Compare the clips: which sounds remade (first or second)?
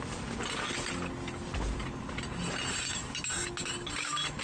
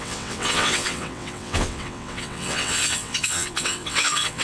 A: second